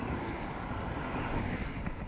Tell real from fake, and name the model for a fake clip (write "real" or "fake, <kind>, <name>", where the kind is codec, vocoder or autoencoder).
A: real